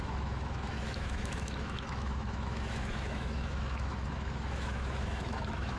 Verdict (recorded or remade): remade